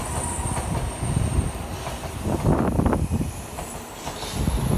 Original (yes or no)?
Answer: yes